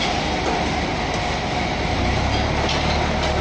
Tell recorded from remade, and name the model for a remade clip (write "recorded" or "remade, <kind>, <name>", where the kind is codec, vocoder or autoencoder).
recorded